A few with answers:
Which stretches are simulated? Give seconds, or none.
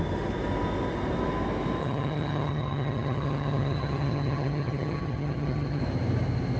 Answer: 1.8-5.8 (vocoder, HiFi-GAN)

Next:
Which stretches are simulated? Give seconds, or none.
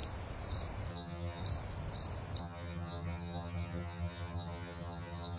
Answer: 0.9-1.4 (vocoder, HiFi-GAN); 2.4-5.4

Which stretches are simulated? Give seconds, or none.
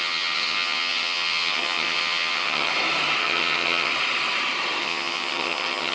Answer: 0.0-2.7 (vocoder, HiFi-GAN); 3.2-3.9; 4.8-5.9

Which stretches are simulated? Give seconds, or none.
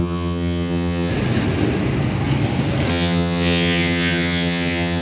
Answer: 0.0-1.1 (vocoder, HiFi-GAN); 2.9-5.0